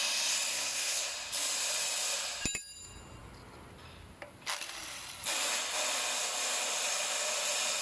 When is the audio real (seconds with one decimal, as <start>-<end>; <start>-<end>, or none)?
0.0-0.5; 1.1-7.8